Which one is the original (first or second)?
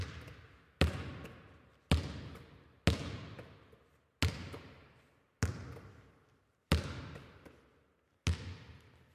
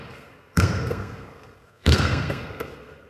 first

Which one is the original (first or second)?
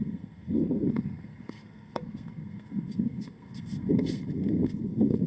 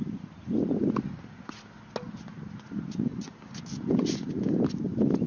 second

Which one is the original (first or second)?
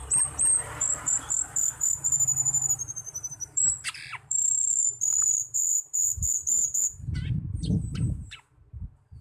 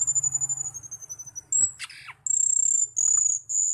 second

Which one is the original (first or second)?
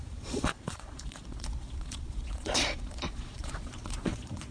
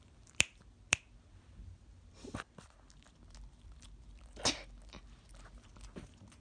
second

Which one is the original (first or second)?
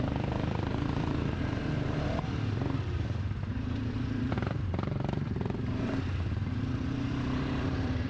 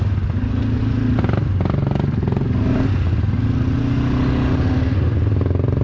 second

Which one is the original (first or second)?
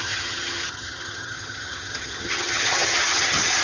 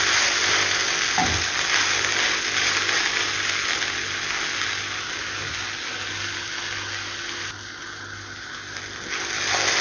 second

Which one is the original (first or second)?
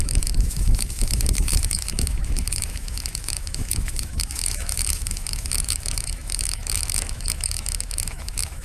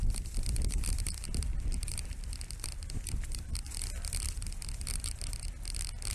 second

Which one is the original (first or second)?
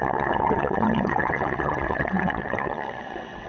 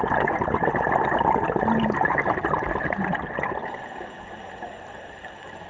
second